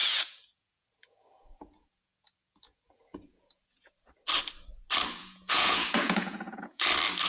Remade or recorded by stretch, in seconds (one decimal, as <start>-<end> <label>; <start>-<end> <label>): 0.0-4.1 remade; 4.1-5.2 recorded; 5.2-6.8 remade; 6.8-7.3 recorded